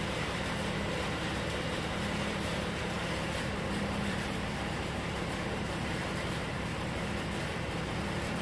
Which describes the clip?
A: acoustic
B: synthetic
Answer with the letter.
B